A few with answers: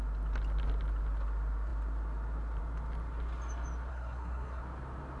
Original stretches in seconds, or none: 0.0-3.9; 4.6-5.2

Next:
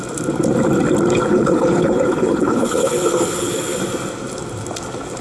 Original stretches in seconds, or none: 0.0-1.3; 3.8-5.2

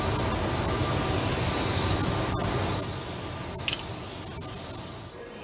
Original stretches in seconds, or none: 0.0-5.4

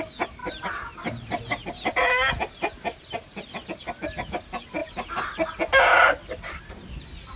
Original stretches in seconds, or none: 0.0-7.4

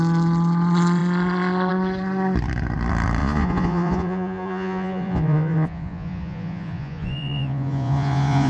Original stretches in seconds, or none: 0.0-3.2

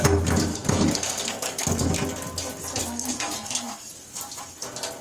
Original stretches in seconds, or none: 0.0-0.5; 1.9-2.8; 3.9-5.0

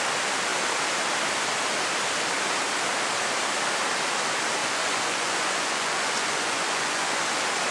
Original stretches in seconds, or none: 0.0-4.6; 7.2-7.7

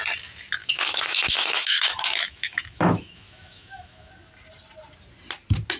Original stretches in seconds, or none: 0.0-0.6; 4.1-5.8